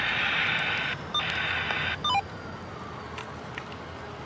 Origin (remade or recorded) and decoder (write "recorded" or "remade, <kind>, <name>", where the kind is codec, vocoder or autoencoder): recorded